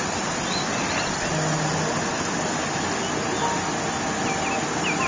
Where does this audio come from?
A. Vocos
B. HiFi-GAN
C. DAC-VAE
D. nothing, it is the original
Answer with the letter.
D